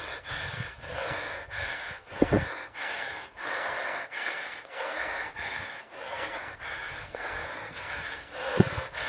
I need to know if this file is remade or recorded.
remade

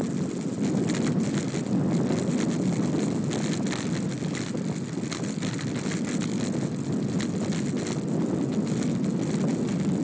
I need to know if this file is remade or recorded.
recorded